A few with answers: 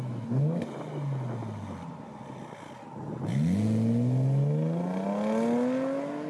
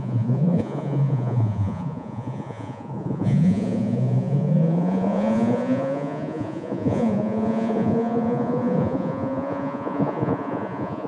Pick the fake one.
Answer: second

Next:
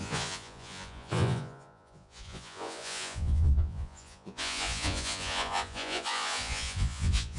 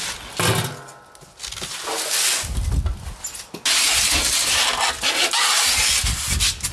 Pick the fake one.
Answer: first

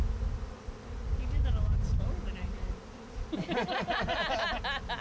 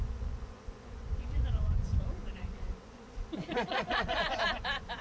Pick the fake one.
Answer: second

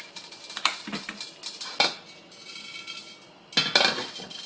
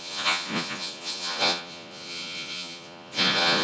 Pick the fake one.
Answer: second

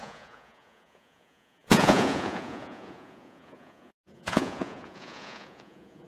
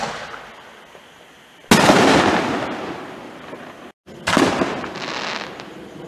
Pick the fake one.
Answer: first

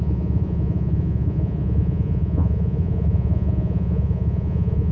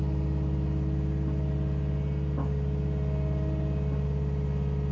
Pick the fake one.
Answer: first